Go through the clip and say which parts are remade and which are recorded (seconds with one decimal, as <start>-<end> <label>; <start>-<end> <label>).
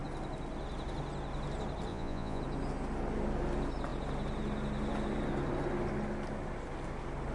0.0-1.9 recorded; 1.9-2.4 remade; 2.4-7.3 recorded